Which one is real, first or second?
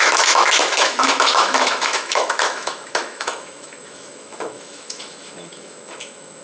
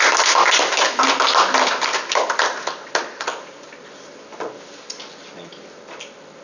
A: second